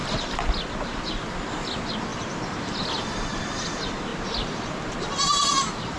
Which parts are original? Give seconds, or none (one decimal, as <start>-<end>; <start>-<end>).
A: 0.0-6.0